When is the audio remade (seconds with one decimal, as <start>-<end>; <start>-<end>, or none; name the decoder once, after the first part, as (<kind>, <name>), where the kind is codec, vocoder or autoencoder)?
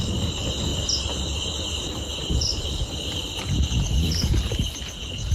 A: none